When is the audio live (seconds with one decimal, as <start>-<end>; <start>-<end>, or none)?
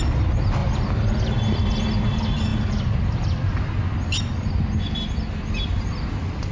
0.0-6.5